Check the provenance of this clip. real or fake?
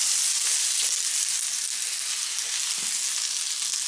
real